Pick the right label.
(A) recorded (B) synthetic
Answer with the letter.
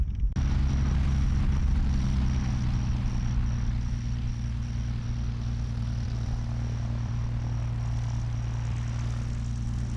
A